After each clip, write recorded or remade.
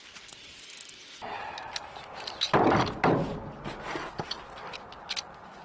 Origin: recorded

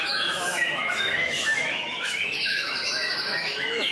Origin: remade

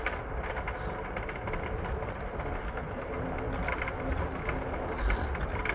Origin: recorded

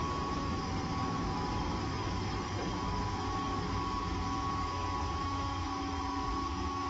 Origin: remade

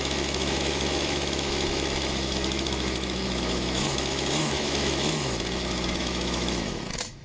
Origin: remade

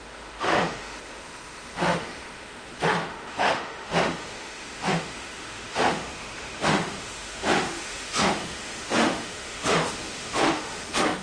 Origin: remade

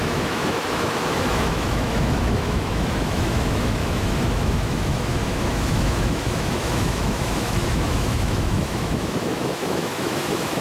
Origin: remade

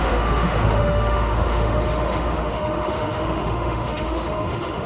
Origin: remade